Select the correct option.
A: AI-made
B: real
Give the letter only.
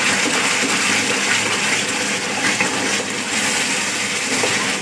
B